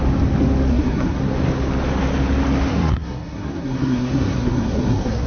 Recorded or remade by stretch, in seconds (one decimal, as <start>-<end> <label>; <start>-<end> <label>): 0.0-0.7 recorded; 0.7-1.2 remade; 1.2-2.7 recorded; 2.7-5.3 remade